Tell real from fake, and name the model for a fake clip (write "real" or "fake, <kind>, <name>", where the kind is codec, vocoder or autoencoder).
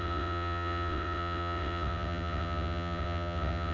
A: fake, vocoder, WaveNeXt